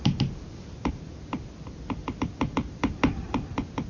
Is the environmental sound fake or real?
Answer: real